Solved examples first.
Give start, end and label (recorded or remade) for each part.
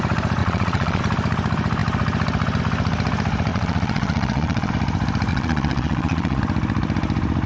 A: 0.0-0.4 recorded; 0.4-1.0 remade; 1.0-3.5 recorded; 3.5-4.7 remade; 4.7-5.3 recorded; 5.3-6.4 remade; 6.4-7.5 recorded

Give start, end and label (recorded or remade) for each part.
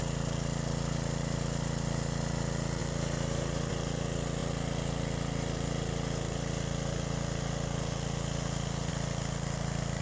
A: 0.0-2.8 recorded; 2.8-3.7 remade; 3.7-10.0 recorded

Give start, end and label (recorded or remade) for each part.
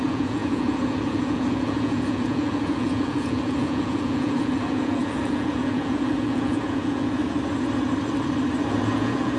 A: 0.0-7.2 remade; 7.2-8.7 recorded; 8.7-9.4 remade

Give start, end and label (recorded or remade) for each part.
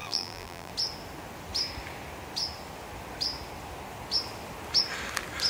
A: 0.0-0.7 remade; 0.7-5.5 recorded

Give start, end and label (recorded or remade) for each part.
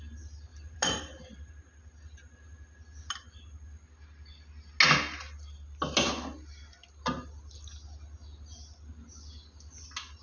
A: 0.0-0.5 recorded; 0.5-1.5 remade; 1.5-10.2 recorded